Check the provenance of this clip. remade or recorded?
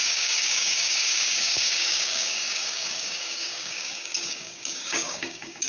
remade